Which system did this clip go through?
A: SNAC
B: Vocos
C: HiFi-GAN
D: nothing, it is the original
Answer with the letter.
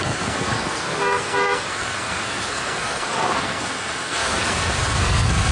A